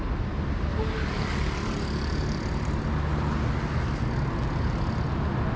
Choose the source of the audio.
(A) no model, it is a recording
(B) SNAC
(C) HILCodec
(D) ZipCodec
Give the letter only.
A